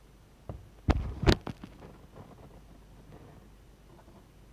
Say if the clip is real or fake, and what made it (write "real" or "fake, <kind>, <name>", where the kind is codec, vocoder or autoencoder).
real